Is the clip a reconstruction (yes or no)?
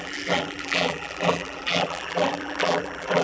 yes